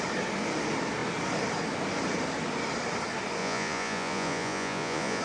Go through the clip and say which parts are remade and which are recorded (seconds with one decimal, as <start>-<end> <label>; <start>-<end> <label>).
0.0-3.4 recorded; 3.4-5.2 remade